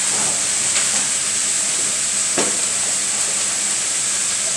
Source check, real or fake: real